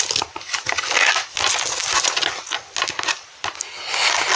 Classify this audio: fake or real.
real